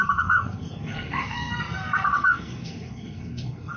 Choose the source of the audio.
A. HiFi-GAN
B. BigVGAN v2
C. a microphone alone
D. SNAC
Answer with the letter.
D